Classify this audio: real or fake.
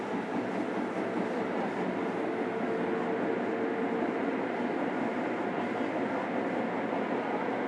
real